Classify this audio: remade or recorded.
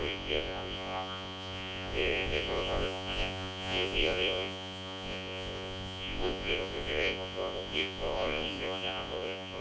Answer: remade